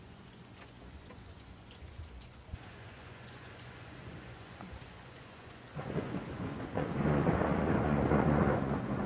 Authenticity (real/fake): fake